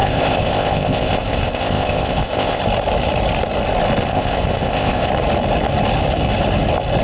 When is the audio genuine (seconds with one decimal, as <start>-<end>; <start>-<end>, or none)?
2.6-4.0; 5.1-7.0